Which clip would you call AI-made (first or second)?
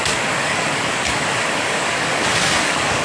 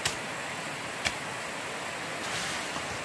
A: first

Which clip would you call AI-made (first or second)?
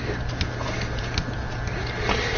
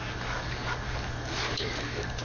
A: second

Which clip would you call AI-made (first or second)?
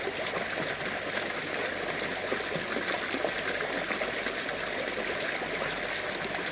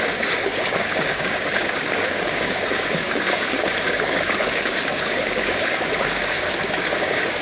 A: second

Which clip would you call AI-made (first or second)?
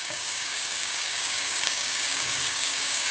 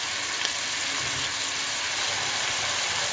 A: first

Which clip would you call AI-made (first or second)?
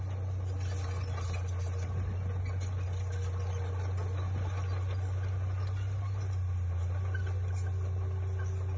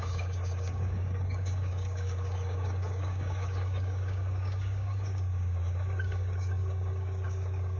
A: second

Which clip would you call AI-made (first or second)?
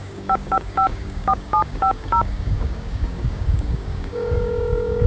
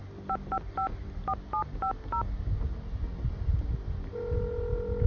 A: first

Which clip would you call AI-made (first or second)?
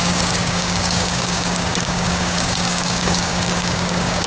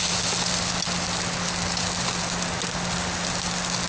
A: first